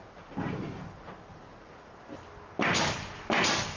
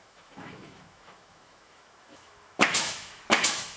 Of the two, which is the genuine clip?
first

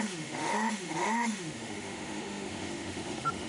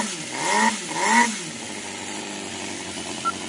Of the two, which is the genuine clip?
second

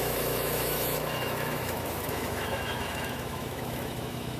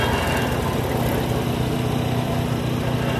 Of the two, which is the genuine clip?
second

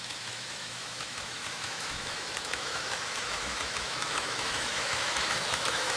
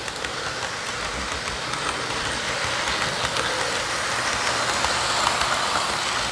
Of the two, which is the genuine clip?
second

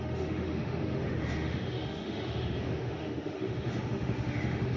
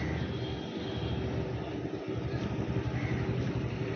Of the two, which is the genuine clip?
second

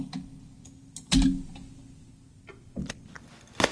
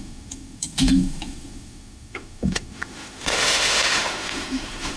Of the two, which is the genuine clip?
first